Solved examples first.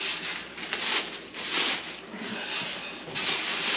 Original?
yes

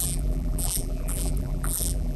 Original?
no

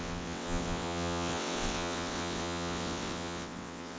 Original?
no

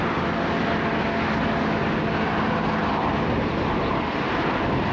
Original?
yes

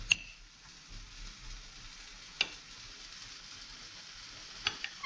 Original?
yes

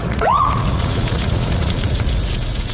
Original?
no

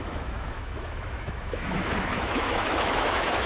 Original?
no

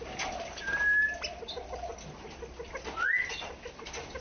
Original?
yes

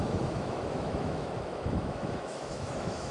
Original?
no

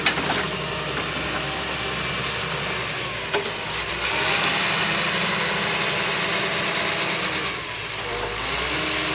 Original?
yes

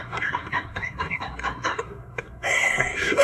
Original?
no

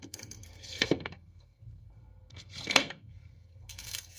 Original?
no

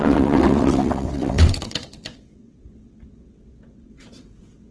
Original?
no